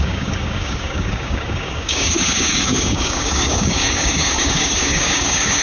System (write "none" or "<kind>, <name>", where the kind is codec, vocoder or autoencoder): codec, DAC